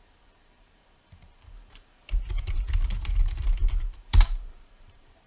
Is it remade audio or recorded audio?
remade